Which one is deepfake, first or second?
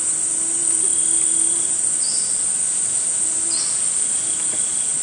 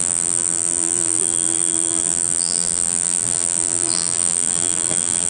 second